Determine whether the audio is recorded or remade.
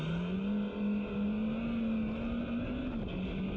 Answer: recorded